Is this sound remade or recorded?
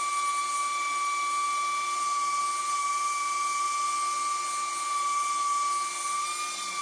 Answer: recorded